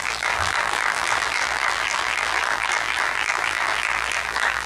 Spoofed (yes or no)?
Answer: yes